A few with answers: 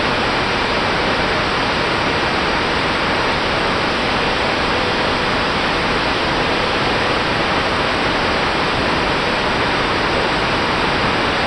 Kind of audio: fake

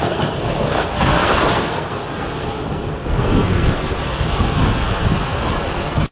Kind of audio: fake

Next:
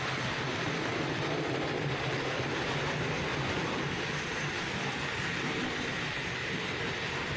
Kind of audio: real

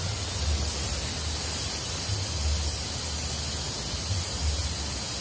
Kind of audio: real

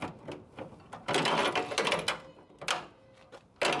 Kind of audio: real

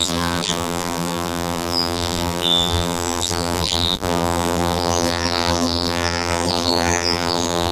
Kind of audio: fake